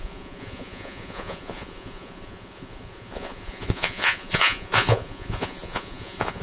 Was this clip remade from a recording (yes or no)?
yes